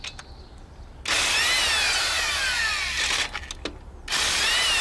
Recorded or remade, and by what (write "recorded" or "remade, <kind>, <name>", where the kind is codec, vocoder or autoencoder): recorded